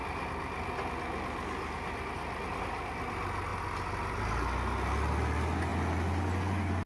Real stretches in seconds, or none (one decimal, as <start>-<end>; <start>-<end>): 0.0-6.9